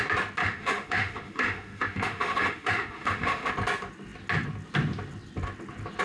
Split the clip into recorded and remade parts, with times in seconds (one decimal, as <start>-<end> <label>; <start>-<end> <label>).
0.0-0.4 recorded; 0.4-3.5 remade; 3.5-6.0 recorded